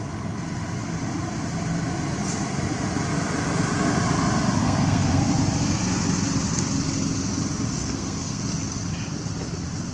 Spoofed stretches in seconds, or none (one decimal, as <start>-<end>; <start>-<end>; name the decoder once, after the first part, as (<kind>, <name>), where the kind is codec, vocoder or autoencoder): 4.6-5.2 (codec, SNAC); 7.8-8.4